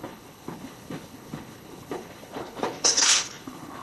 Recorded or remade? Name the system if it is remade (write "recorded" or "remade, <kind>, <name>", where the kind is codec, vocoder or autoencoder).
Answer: remade, codec, HILCodec